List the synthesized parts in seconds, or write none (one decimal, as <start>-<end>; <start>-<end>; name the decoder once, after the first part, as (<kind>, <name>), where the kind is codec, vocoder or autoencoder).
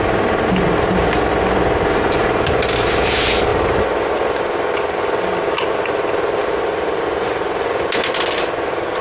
none